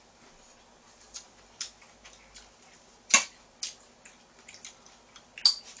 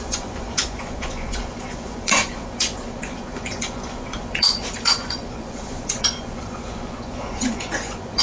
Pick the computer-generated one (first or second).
second